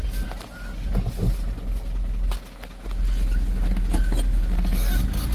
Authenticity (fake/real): real